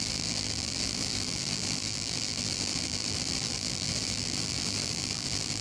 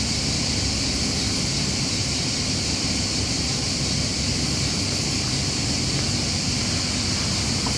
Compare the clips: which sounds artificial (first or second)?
first